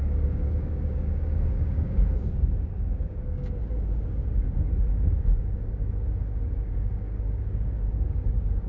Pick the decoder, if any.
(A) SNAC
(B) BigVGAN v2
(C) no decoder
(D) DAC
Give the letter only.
D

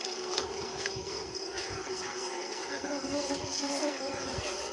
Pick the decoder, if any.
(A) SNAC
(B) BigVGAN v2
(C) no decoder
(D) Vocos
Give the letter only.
A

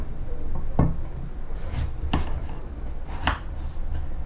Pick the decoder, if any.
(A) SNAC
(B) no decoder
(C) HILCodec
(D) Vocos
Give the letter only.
B